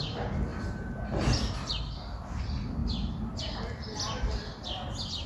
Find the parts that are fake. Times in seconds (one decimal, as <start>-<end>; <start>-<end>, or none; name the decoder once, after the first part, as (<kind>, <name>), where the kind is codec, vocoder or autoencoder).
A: none